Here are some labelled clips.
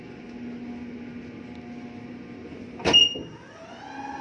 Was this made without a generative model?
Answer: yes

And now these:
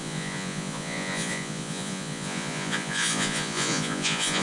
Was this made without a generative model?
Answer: no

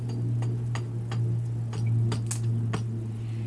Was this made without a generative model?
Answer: yes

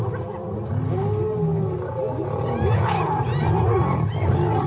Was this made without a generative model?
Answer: yes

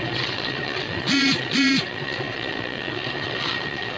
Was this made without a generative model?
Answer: no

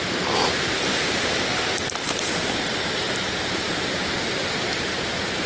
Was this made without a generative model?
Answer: no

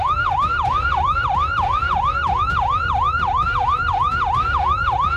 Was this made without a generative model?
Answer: no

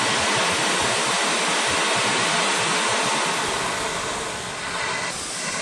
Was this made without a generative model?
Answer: yes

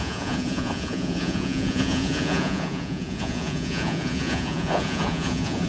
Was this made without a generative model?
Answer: no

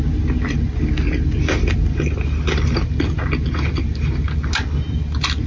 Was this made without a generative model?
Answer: yes